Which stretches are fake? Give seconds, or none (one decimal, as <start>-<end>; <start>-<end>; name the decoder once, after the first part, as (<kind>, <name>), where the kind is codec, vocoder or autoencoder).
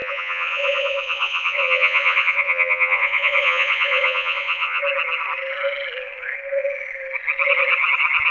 0.0-4.8 (vocoder, Vocos)